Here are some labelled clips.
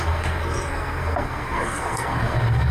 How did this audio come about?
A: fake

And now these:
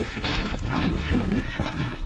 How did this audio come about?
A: fake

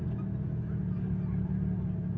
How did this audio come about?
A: real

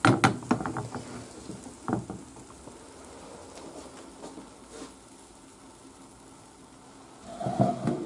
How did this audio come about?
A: real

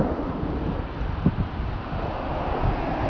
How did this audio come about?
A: real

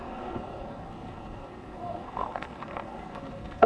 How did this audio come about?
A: fake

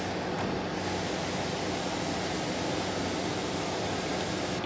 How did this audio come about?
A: real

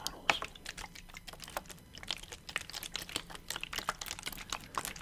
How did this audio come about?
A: real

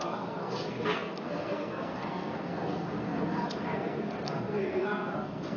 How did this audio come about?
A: fake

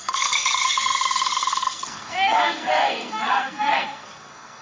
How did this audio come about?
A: fake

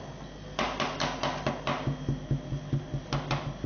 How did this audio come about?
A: real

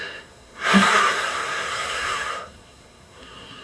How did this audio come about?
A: fake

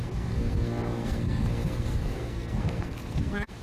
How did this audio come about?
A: fake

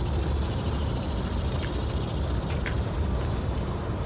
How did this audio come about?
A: real